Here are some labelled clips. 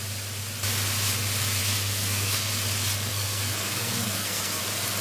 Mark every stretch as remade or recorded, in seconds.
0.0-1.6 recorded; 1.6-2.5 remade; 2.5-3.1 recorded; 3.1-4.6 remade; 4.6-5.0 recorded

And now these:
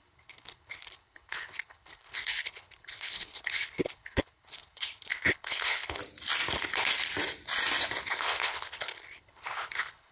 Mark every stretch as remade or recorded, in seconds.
0.0-6.0 remade; 6.0-8.1 recorded; 8.1-10.1 remade